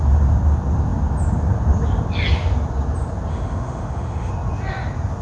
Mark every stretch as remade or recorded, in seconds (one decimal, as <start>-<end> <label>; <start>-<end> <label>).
0.0-3.3 recorded; 3.3-4.3 remade; 4.3-5.2 recorded